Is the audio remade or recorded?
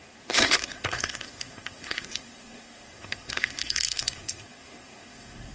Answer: remade